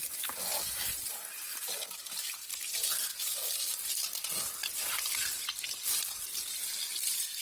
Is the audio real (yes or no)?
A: yes